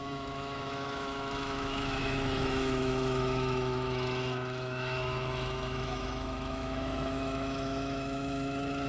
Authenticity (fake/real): fake